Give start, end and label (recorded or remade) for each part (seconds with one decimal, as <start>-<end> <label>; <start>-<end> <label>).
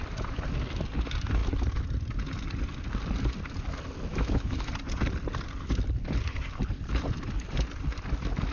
0.0-4.1 recorded; 4.1-4.7 remade; 4.7-8.5 recorded